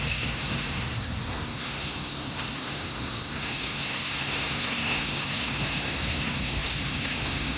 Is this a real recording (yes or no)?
no